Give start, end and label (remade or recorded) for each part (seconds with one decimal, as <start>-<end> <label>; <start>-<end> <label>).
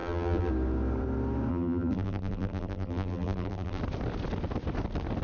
0.0-0.5 remade; 0.5-1.5 recorded; 1.5-3.8 remade; 3.8-5.2 recorded